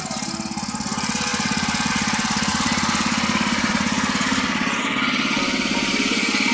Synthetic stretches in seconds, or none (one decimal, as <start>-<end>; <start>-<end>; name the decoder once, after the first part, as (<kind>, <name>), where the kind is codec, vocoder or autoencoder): 2.5-3.7 (vocoder, BigVGAN v2)